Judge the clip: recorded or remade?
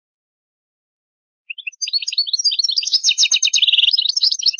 recorded